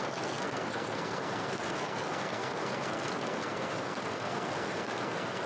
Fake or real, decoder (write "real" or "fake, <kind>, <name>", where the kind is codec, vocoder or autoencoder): fake, codec, SNAC